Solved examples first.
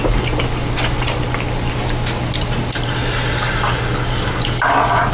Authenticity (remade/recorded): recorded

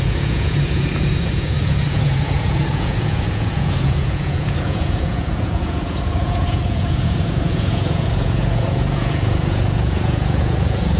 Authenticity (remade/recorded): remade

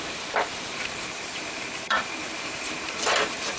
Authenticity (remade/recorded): remade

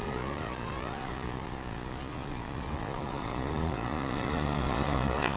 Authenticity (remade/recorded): remade